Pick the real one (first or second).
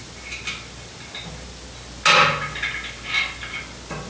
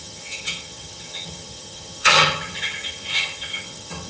first